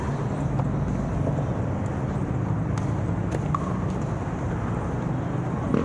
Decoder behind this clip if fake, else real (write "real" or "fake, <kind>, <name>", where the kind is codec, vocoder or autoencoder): real